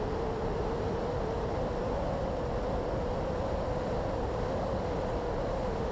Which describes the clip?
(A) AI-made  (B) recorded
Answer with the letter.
B